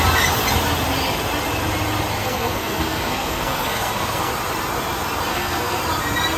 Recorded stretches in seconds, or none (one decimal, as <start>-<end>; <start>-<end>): 0.0-2.2; 4.3-5.3; 5.8-6.4